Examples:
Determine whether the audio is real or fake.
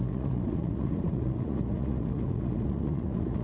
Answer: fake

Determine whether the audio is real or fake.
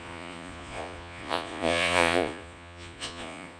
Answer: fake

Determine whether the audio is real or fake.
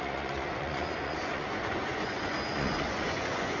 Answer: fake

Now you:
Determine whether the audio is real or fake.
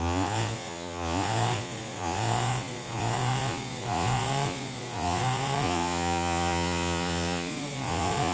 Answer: fake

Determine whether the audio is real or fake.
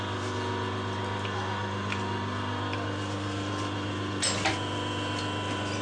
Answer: real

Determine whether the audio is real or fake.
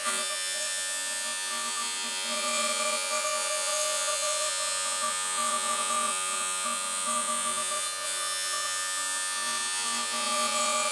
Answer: fake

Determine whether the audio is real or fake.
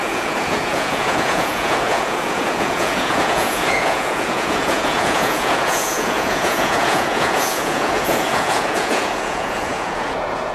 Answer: fake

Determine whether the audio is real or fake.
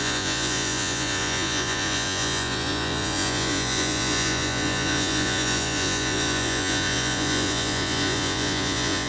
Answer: fake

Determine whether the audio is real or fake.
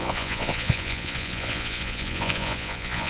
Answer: fake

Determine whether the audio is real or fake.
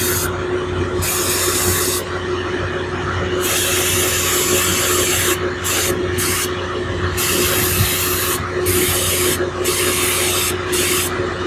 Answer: real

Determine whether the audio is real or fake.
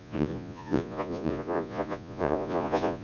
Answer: fake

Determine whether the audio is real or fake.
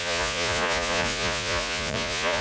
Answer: fake